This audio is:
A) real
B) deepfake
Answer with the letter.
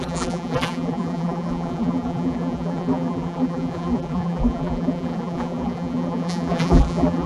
B